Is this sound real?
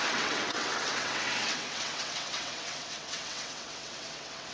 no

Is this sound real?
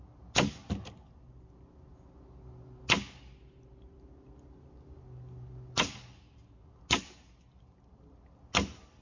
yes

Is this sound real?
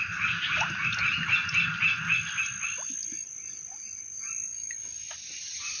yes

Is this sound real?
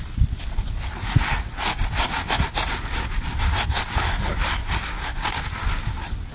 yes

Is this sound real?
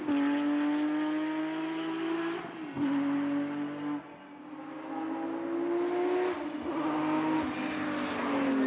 yes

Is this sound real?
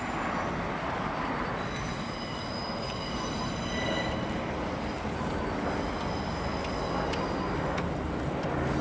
yes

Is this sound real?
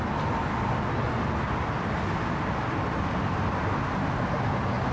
yes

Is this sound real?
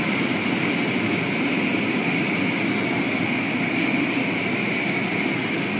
yes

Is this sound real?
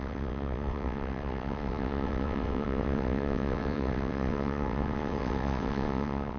no